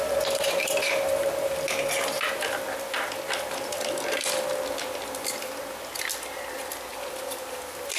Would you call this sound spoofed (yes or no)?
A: no